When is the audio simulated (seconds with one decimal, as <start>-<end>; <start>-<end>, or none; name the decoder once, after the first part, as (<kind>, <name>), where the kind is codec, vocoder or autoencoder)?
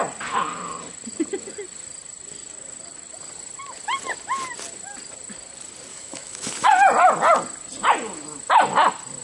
5.9-6.7 (autoencoder, DAC-VAE)